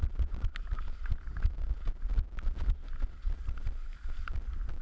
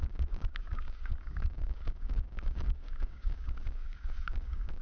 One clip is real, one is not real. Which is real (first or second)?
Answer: first